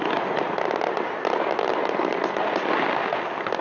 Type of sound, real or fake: real